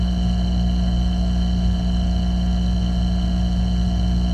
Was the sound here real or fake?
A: real